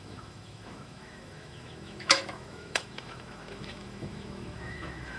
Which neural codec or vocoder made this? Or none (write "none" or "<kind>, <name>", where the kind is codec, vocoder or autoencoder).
autoencoder, DAC-VAE